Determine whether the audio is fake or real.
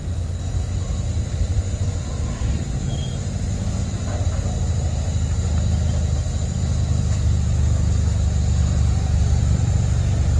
real